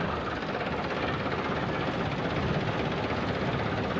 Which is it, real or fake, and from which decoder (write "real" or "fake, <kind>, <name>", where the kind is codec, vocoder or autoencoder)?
real